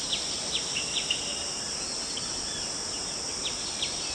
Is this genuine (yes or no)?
yes